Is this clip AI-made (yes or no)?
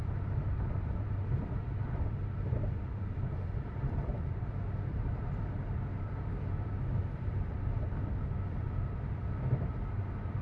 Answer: yes